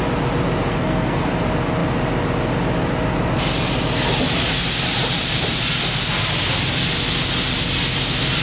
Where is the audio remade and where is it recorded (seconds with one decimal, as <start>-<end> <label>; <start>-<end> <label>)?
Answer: 0.0-0.7 recorded; 0.7-1.3 remade; 1.3-8.4 recorded